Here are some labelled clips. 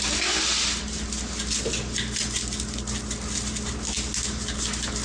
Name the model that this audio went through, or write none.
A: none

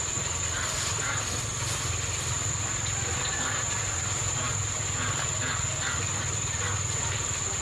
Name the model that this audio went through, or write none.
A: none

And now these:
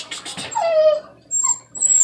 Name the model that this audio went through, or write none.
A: none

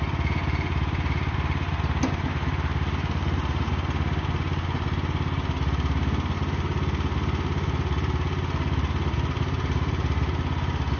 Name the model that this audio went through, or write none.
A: none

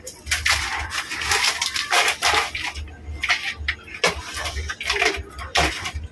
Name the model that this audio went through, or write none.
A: none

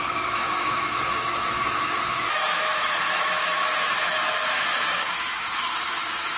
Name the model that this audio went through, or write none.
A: autoencoder, DAC-VAE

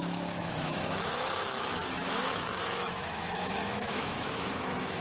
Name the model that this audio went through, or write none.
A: autoencoder, DAC-VAE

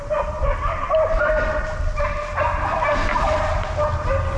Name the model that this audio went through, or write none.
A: none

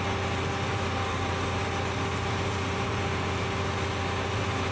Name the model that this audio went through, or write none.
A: none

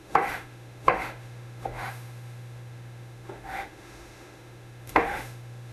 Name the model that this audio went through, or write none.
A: autoencoder, DAC-VAE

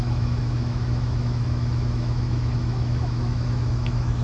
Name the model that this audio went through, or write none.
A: autoencoder, DAC-VAE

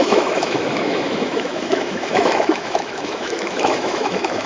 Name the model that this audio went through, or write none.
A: autoencoder, DAC-VAE